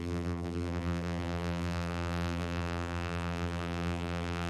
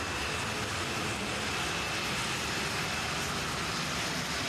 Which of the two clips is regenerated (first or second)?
first